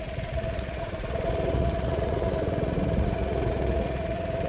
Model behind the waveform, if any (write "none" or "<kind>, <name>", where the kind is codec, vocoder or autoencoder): vocoder, Vocos